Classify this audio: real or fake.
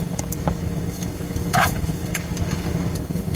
fake